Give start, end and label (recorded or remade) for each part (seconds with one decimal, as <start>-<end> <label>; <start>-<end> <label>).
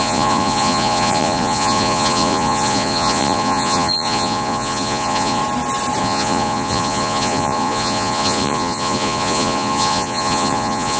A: 0.0-5.4 remade; 5.4-6.0 recorded; 6.0-11.0 remade